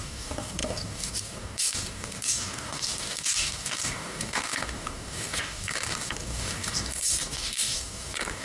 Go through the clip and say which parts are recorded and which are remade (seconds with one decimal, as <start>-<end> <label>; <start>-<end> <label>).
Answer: 0.0-8.4 remade